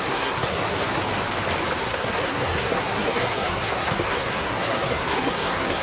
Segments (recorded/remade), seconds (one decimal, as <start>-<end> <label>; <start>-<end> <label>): 0.0-1.0 remade; 1.0-1.8 recorded; 1.8-5.8 remade